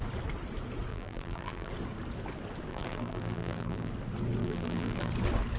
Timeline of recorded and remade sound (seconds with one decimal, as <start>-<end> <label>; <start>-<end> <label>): 0.0-0.9 recorded; 0.9-1.7 remade; 1.7-2.7 recorded; 2.7-3.9 remade; 3.9-4.4 recorded; 4.4-5.1 remade; 5.1-5.6 recorded